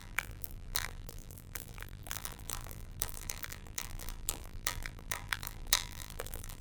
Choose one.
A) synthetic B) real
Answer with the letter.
A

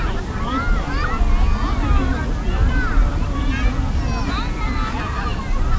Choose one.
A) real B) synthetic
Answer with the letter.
A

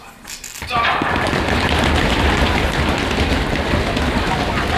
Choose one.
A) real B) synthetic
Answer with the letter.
A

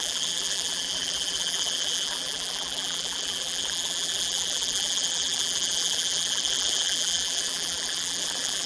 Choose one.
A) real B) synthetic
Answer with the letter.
B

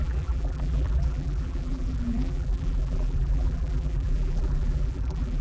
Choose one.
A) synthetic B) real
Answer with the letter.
A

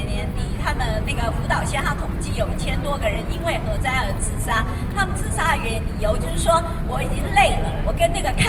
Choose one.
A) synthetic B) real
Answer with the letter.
B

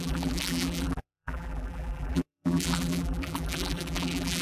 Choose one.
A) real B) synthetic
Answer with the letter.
B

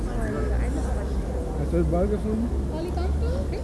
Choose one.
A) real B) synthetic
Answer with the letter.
A